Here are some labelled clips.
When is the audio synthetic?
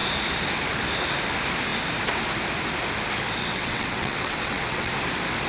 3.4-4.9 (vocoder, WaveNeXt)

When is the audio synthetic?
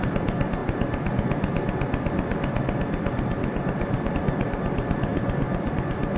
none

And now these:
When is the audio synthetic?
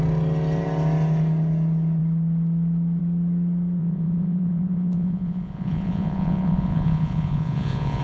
3.8-8.0 (vocoder, Vocos)